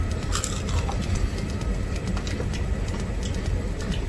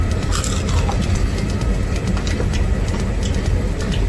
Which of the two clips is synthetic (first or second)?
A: first